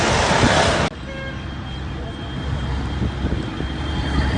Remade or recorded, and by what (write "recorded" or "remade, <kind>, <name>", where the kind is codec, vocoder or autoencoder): recorded